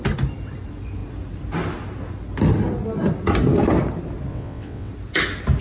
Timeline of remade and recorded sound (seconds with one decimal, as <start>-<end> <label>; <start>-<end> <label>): 0.0-4.3 recorded; 4.3-4.9 remade; 4.9-5.6 recorded